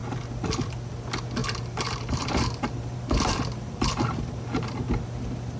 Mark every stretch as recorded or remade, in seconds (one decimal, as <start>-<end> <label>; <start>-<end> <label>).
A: 0.0-1.4 recorded; 1.4-4.8 remade; 4.8-5.6 recorded